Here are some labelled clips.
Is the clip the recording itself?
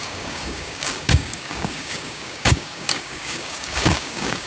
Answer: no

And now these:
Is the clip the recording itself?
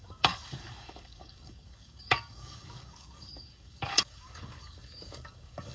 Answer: no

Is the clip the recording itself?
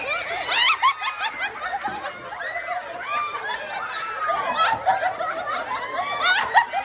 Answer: yes